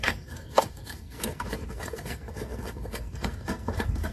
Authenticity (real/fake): fake